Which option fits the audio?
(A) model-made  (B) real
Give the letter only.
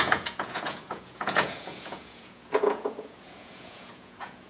A